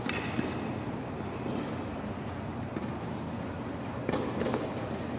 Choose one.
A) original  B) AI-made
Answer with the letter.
A